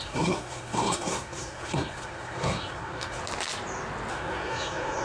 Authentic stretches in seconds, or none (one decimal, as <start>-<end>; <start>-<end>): 3.2-4.1